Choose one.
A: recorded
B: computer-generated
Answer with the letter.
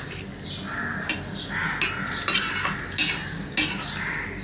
A